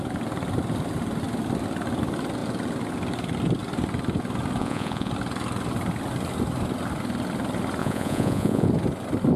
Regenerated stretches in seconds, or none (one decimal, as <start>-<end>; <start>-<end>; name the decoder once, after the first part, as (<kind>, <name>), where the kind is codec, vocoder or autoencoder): 4.6-5.1 (vocoder, Vocos); 7.8-8.7